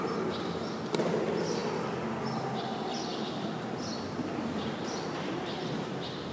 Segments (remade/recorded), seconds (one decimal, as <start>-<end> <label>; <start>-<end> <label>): 0.0-6.3 recorded